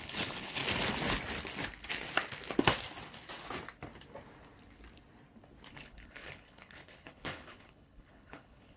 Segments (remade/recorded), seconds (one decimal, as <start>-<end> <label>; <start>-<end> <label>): 0.0-0.6 remade; 0.6-5.7 recorded; 5.7-8.8 remade